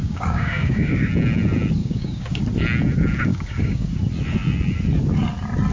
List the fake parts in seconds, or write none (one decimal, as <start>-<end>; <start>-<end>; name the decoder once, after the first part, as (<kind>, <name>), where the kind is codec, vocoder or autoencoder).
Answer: 0.0-1.1 (codec, DAC); 1.8-2.4; 3.3-3.9